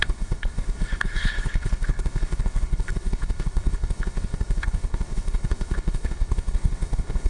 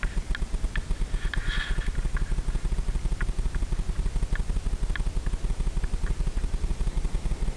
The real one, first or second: second